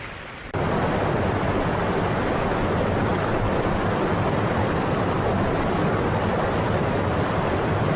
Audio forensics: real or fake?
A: real